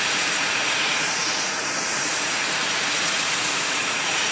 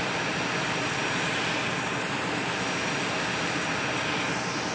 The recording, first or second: second